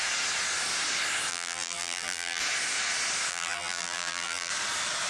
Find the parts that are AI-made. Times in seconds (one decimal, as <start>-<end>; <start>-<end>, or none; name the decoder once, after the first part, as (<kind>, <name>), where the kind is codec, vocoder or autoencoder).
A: 1.3-2.4 (vocoder, BigVGAN v2); 3.3-4.5